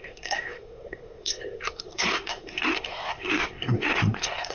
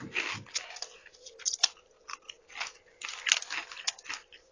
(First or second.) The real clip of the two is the second